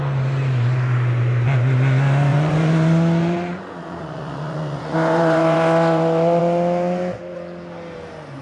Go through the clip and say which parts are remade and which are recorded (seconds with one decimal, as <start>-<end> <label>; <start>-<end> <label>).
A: 0.0-2.3 recorded; 2.3-6.4 remade; 6.4-8.4 recorded